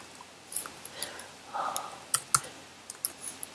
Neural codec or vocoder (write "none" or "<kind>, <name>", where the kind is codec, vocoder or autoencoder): none